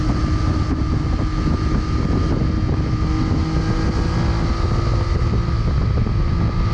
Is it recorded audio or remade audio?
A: recorded